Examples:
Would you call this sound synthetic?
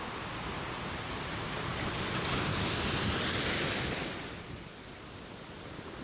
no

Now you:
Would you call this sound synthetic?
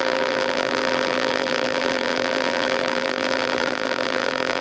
yes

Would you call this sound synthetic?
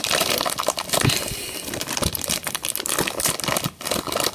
no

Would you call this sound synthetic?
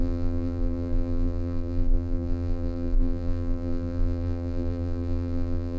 yes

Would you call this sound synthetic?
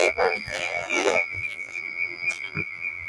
yes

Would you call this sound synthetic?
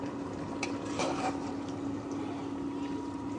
yes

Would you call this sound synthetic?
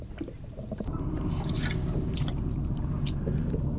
yes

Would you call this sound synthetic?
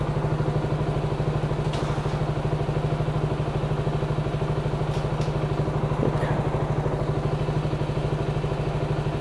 no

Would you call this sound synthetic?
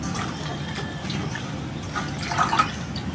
no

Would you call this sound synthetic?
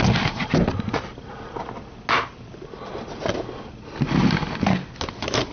no